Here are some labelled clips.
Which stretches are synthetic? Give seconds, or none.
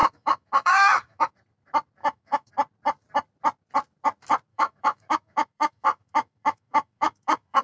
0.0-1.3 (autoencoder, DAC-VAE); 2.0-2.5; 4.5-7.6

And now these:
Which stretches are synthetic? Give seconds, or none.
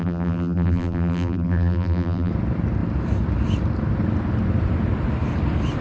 0.0-2.3 (vocoder, BigVGAN v2)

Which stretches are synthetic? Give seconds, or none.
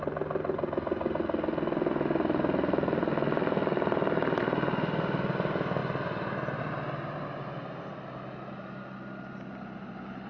none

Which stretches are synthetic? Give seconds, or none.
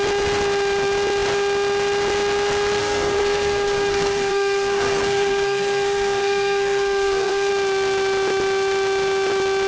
2.8-7.5 (codec, SNAC)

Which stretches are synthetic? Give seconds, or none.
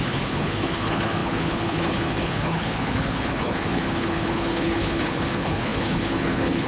0.0-6.7 (codec, HILCodec)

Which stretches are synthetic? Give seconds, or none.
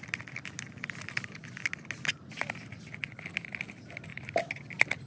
none